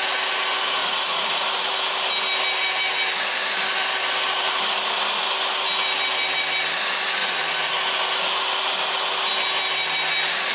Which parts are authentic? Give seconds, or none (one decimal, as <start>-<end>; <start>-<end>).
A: 0.0-0.8; 1.4-7.2; 7.7-10.5

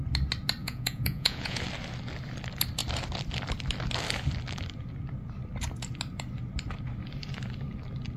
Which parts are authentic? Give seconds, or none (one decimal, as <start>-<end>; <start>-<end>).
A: 0.0-0.6; 1.6-8.2

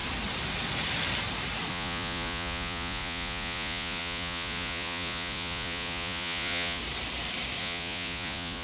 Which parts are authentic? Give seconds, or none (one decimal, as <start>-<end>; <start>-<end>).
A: 0.0-1.7; 6.8-7.6

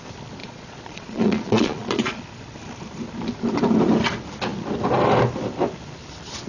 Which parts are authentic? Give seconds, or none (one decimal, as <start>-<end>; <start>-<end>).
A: 0.0-0.4; 2.2-6.5

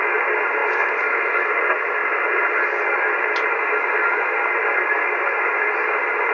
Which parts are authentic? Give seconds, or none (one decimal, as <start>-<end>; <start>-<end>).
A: 0.0-6.3

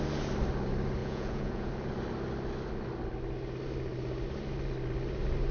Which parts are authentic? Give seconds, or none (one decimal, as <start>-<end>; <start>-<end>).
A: 0.0-1.0; 1.7-5.5

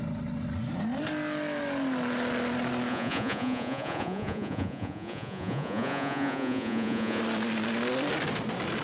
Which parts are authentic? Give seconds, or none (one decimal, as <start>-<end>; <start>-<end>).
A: 0.0-2.9; 7.2-8.8

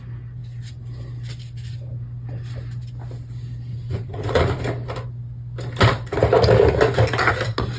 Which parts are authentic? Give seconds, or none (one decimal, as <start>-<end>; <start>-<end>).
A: 0.0-3.7; 4.6-7.8